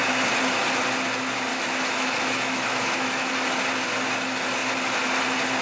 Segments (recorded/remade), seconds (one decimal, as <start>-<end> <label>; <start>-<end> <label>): 0.0-1.5 recorded; 1.5-3.3 remade; 3.3-5.6 recorded